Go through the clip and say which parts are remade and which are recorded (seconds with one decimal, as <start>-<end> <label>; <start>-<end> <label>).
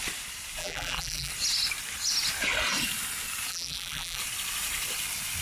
0.0-0.6 recorded; 0.6-1.3 remade; 1.3-3.5 recorded; 3.5-4.2 remade; 4.2-5.4 recorded